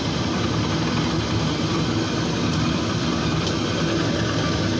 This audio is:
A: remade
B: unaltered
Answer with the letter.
B